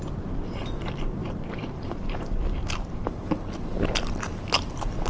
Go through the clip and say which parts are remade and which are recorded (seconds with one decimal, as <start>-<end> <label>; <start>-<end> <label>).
0.0-1.2 recorded; 1.2-3.3 remade; 3.3-5.1 recorded